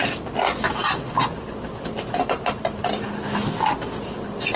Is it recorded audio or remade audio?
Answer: recorded